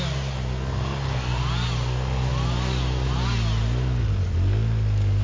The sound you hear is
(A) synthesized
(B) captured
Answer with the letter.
B